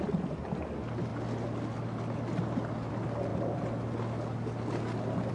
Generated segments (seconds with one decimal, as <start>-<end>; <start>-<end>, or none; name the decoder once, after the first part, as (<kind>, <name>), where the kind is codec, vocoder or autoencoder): none